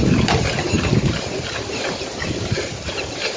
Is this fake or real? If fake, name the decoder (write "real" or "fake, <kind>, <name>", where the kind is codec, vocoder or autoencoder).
fake, vocoder, BigVGAN v2